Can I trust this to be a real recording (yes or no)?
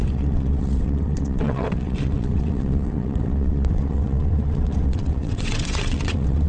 no